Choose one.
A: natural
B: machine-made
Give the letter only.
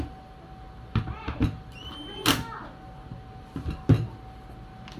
A